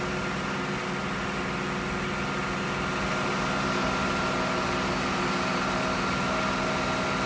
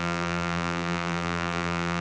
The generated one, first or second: second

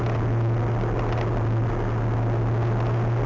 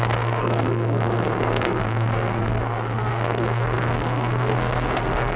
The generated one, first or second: second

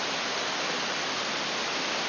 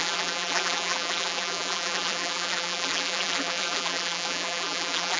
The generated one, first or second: second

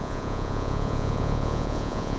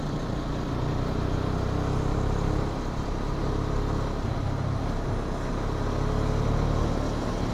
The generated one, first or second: first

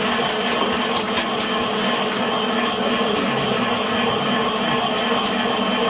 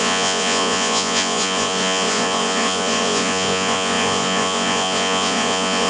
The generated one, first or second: second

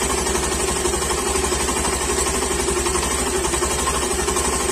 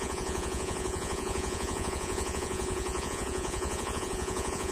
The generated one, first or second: second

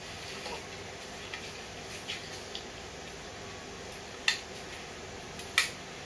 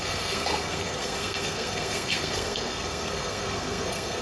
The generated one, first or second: second